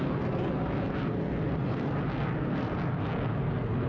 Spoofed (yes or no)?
no